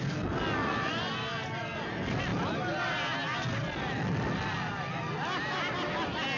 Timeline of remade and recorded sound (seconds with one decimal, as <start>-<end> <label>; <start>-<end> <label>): 0.0-0.6 recorded; 0.6-1.1 remade; 1.1-6.4 recorded